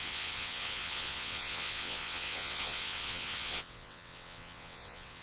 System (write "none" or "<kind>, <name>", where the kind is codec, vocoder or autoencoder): vocoder, WaveNeXt